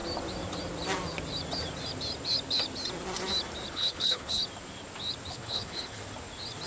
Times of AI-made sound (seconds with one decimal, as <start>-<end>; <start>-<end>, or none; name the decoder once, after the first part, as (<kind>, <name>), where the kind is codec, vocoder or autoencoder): 3.7-4.4 (codec, HILCodec); 5.3-6.0